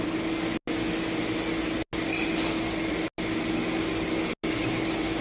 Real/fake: real